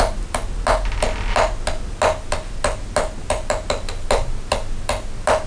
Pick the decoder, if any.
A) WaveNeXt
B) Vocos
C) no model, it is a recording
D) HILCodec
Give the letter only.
C